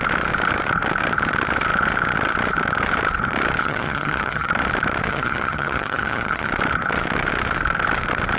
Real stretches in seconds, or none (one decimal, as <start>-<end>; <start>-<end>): 0.0-3.6; 4.5-5.1; 6.5-8.4